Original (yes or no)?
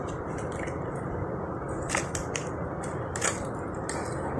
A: yes